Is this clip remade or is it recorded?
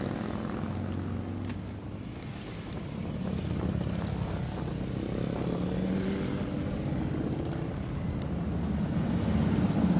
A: recorded